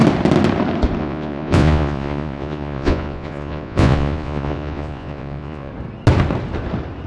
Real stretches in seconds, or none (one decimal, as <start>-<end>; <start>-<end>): 0.0-1.0; 5.7-7.1